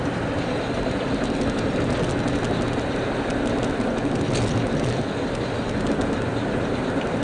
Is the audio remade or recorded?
recorded